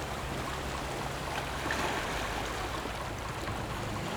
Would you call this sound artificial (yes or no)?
no